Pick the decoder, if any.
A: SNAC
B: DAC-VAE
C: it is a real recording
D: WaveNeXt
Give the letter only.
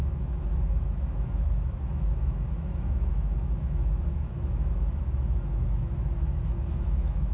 B